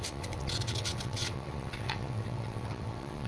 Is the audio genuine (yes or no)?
no